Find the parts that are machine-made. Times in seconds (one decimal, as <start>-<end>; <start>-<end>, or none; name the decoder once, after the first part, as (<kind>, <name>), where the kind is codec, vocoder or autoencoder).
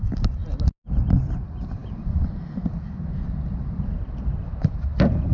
0.0-0.4 (vocoder, BigVGAN v2); 1.0-5.3